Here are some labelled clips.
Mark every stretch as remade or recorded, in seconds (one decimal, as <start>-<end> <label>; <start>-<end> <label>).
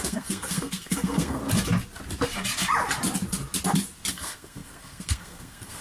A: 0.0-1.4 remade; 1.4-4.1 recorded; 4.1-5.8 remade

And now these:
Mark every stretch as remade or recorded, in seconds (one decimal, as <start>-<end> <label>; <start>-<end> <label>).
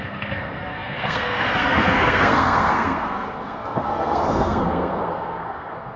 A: 0.0-6.0 remade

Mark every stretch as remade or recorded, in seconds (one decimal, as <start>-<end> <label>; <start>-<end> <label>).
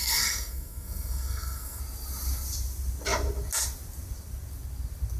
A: 0.0-1.8 remade; 1.8-5.2 recorded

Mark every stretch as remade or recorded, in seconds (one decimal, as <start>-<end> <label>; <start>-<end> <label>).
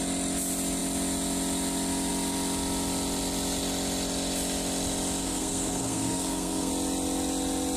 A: 0.0-5.2 recorded; 5.2-6.7 remade; 6.7-7.8 recorded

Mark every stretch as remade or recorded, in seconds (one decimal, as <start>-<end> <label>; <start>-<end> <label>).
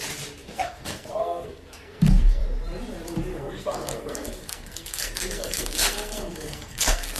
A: 0.0-0.4 recorded; 0.4-2.4 remade; 2.4-3.3 recorded; 3.3-7.2 remade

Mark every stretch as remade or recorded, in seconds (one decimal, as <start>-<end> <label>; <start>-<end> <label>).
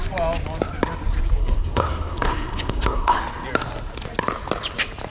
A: 0.0-1.4 recorded; 1.4-3.2 remade; 3.2-5.1 recorded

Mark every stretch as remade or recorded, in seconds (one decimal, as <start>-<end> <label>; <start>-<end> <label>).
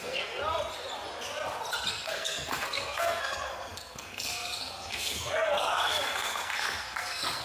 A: 0.0-0.4 remade; 0.4-1.9 recorded; 1.9-7.4 remade